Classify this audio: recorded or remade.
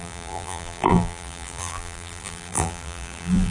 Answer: remade